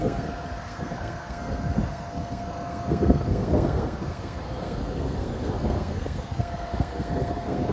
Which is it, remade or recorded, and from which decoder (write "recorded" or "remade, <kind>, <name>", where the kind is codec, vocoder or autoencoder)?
remade, codec, SNAC